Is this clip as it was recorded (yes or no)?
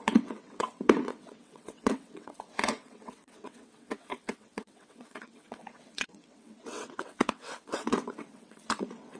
no